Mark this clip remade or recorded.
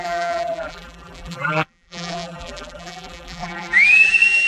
remade